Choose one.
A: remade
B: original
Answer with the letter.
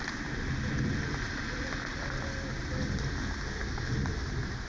B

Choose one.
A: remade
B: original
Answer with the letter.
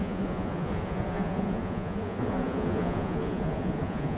A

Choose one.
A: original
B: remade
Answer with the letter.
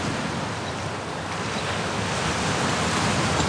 A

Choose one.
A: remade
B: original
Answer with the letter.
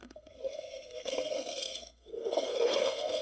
A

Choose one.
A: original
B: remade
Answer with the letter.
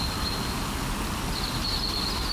A